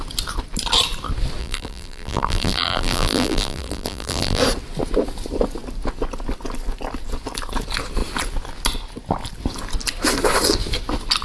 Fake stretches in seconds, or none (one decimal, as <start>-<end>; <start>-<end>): 1.4-4.4